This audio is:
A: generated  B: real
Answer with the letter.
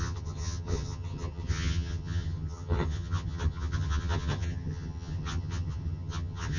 A